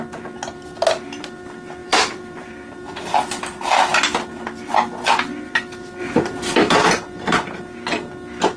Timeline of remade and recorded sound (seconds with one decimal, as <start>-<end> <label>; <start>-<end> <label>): 0.0-1.8 recorded; 1.8-2.5 remade; 2.5-6.0 recorded; 6.0-6.7 remade; 6.7-8.6 recorded